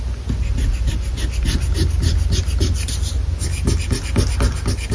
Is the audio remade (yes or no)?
no